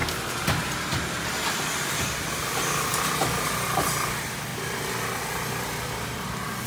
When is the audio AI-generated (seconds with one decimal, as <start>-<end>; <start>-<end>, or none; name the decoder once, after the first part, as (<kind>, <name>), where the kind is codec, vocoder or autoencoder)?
none